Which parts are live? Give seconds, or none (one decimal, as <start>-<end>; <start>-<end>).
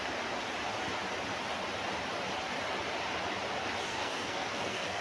0.0-3.9